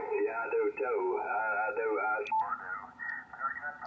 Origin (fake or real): real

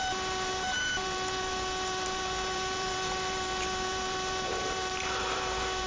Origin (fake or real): fake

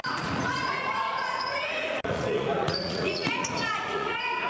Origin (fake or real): fake